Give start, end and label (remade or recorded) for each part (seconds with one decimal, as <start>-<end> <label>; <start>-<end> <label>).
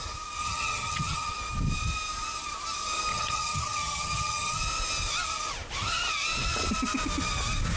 0.0-0.4 recorded; 0.4-1.3 remade; 1.3-3.1 recorded; 3.1-4.6 remade; 4.6-7.8 recorded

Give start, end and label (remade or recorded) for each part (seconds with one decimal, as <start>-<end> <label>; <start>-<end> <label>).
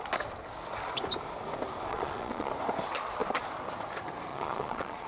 0.0-1.9 recorded; 1.9-2.5 remade; 2.5-4.3 recorded; 4.3-5.1 remade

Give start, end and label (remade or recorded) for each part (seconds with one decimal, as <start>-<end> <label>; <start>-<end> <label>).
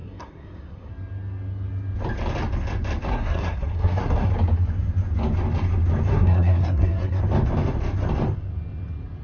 0.0-0.9 remade; 0.9-3.1 recorded; 3.1-4.3 remade; 4.3-6.1 recorded; 6.1-7.2 remade; 7.2-9.2 recorded